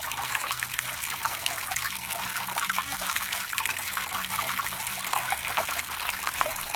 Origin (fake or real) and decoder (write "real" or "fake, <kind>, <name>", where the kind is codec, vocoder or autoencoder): fake, codec, SNAC